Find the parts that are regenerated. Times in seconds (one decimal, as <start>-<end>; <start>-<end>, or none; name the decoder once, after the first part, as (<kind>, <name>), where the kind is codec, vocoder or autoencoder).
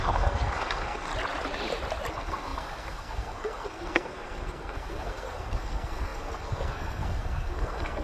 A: 0.0-1.1 (codec, SNAC); 2.1-8.0